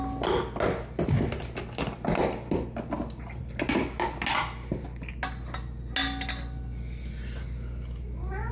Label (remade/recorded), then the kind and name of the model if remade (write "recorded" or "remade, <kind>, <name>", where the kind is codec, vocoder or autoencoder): recorded